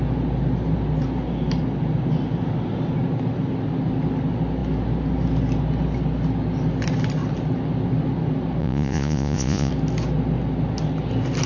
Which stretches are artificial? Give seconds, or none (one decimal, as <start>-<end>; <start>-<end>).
8.6-9.7